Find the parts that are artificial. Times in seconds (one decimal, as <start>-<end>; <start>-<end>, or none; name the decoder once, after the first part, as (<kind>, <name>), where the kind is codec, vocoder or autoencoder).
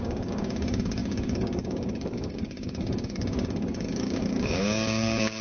0.0-5.4 (codec, DAC)